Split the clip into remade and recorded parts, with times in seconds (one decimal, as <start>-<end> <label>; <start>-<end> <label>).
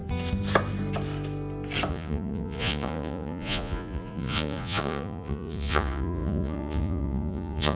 0.0-1.9 recorded; 1.9-7.8 remade